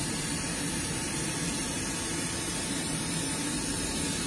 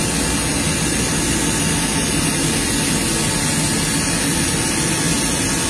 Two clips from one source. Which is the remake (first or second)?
first